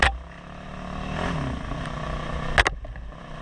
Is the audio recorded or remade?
recorded